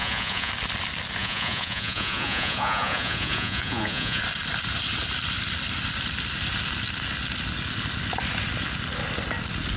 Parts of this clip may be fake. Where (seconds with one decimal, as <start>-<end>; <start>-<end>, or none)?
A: 0.0-0.5; 1.2-4.2